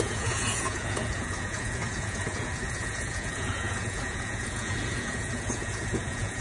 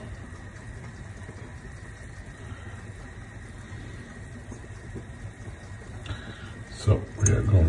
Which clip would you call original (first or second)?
second